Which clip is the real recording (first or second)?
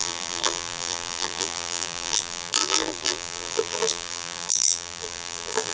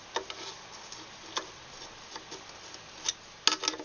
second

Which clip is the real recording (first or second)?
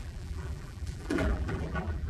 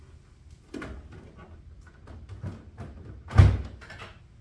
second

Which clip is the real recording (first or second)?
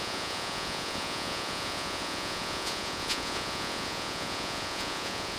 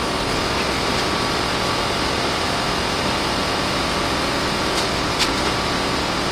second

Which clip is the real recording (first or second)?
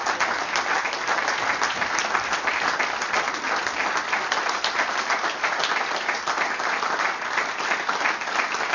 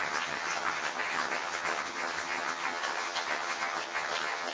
first